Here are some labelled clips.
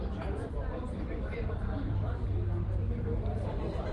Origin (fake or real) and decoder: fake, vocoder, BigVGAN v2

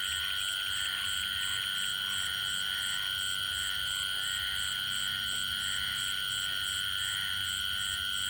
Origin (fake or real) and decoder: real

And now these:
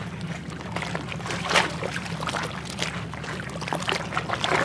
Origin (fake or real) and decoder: real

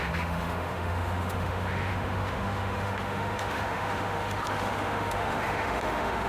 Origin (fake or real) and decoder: fake, autoencoder, DAC-VAE